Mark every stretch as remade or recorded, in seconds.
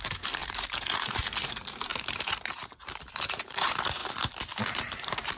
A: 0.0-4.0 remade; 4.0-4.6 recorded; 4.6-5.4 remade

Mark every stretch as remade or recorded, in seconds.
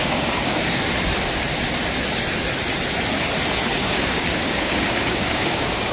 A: 0.0-0.8 remade; 0.8-3.8 recorded; 3.8-5.9 remade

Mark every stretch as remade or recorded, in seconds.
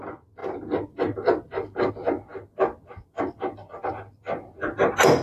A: 0.0-5.2 recorded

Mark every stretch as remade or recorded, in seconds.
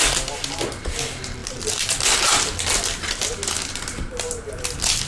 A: 0.0-5.1 recorded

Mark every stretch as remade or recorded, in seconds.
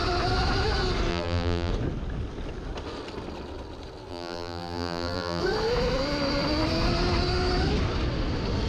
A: 0.0-1.1 recorded; 1.1-1.7 remade; 1.7-4.1 recorded; 4.1-5.4 remade; 5.4-8.7 recorded